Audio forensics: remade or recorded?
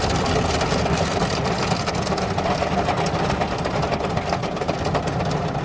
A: recorded